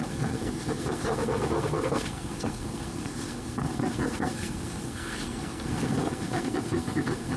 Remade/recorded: remade